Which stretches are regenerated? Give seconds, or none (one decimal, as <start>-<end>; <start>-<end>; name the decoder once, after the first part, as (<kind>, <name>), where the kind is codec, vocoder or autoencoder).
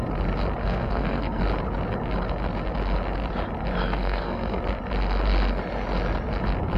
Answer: 0.6-1.4 (codec, SNAC); 3.8-4.6